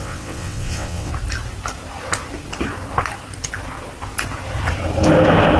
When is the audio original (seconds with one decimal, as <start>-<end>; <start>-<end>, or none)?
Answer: 1.1-5.6